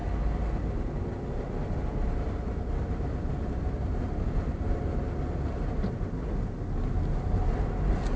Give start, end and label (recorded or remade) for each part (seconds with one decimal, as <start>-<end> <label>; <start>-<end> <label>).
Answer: 0.0-8.2 recorded